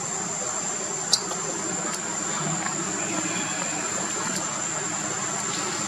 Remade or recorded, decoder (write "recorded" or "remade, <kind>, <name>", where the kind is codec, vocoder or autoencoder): recorded